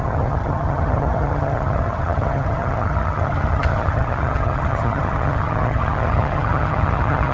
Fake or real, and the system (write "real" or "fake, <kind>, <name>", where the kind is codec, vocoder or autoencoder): fake, vocoder, HiFi-GAN